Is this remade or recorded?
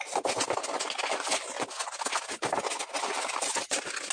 recorded